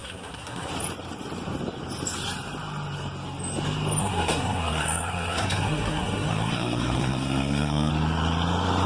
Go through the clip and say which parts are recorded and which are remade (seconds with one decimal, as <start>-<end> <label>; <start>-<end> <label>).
0.0-0.7 remade; 0.7-4.0 recorded; 4.0-7.9 remade; 7.9-8.9 recorded

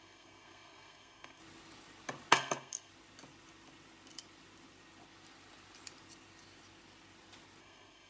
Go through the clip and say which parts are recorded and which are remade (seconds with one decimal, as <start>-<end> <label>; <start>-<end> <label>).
0.0-1.4 remade; 1.4-2.3 recorded; 2.3-2.9 remade; 2.9-7.6 recorded; 7.6-8.1 remade

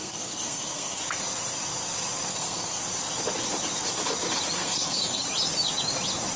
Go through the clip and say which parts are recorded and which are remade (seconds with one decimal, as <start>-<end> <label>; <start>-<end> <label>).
0.0-1.0 remade; 1.0-2.3 recorded; 2.3-2.8 remade; 2.8-4.6 recorded; 4.6-5.2 remade; 5.2-6.4 recorded

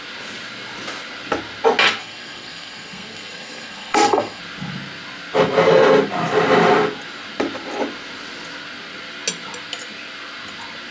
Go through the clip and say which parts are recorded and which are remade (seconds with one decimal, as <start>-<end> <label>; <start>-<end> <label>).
0.0-2.0 recorded; 2.0-4.4 remade; 4.4-10.9 recorded

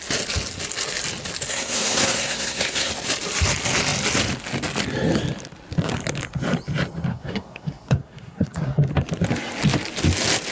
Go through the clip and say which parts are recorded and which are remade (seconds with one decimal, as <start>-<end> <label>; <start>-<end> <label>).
0.0-1.5 recorded; 1.5-2.9 remade; 2.9-7.1 recorded; 7.1-8.9 remade; 8.9-10.5 recorded